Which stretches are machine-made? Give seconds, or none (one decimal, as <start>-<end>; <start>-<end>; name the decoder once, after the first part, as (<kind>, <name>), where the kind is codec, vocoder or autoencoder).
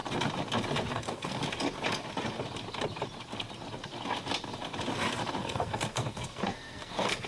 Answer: 0.9-1.4 (codec, SNAC); 5.4-7.3